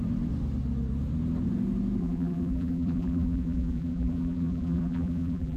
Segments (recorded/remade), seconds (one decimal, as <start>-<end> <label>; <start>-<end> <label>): 0.0-2.0 recorded; 2.0-5.6 remade

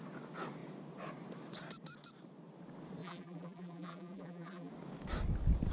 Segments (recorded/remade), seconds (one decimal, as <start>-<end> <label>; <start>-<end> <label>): 0.0-3.0 recorded; 3.0-4.7 remade; 4.7-5.7 recorded

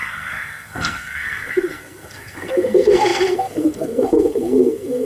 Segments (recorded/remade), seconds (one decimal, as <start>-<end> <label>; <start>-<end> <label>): 0.0-5.1 remade

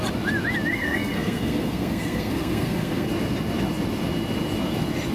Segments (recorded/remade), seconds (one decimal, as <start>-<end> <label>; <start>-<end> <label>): 0.0-0.7 recorded; 0.7-3.1 remade; 3.1-5.1 recorded

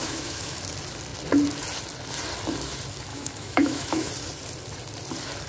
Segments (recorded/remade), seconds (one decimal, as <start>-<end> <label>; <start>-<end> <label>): 0.0-0.6 remade; 0.6-3.1 recorded; 3.1-4.1 remade; 4.1-5.5 recorded

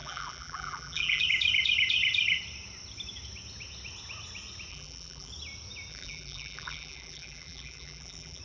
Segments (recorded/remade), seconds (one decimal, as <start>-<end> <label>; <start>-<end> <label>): 0.0-1.2 remade; 1.2-4.7 recorded; 4.7-5.3 remade; 5.3-5.9 recorded; 5.9-8.4 remade

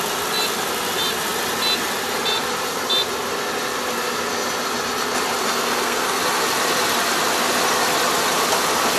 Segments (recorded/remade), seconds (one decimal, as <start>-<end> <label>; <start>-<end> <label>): 0.0-5.4 recorded; 5.4-6.2 remade; 6.2-9.0 recorded